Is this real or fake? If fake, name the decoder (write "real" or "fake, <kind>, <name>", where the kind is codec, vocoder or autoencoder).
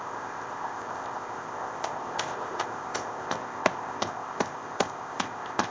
fake, codec, ZipCodec